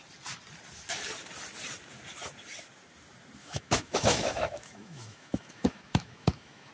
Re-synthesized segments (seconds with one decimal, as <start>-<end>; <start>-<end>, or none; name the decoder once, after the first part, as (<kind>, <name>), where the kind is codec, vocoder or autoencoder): 3.4-6.7 (autoencoder, DAC-VAE)